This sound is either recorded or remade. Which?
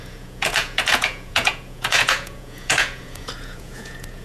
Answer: remade